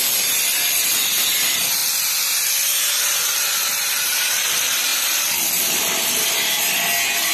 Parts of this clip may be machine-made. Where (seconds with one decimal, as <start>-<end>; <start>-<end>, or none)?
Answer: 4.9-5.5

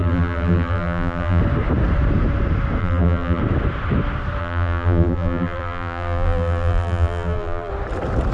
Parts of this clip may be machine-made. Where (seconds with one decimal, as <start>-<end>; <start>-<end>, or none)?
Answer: 0.0-1.4; 2.8-3.4; 4.4-7.7

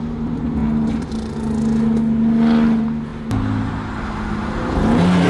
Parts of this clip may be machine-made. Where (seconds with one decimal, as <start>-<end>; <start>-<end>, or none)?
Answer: none